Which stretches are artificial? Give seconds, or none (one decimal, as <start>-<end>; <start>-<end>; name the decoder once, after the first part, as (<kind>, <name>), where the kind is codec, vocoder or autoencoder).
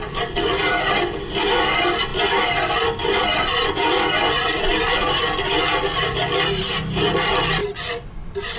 none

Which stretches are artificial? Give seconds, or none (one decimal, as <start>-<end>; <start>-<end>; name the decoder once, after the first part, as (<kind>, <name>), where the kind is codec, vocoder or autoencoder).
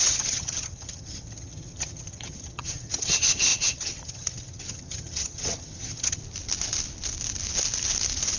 0.0-6.2 (vocoder, HiFi-GAN)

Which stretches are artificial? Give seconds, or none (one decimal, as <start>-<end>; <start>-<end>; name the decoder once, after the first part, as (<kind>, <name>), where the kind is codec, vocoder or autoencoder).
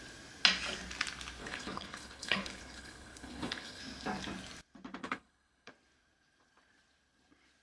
1.4-3.8 (codec, HILCodec); 5.0-5.7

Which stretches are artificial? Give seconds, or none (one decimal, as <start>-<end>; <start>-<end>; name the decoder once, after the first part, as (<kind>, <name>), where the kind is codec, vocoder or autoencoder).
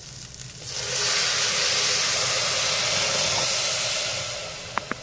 none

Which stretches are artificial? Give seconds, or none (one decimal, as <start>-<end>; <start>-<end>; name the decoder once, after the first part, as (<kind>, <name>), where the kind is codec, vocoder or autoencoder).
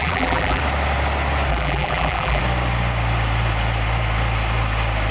0.0-0.6 (vocoder, BigVGAN v2); 1.5-2.4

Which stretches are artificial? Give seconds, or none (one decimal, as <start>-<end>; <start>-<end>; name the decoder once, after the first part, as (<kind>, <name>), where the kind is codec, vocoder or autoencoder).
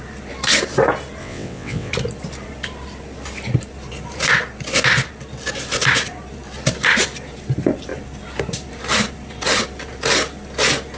1.2-1.9 (vocoder, WaveNeXt)